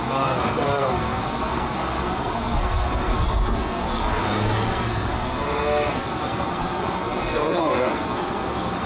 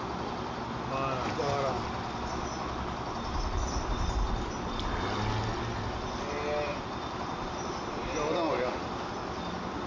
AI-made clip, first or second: first